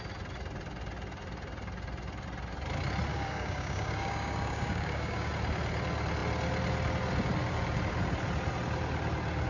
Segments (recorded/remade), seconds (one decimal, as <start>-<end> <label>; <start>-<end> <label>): 0.0-3.1 recorded; 3.1-5.3 remade; 5.3-9.5 recorded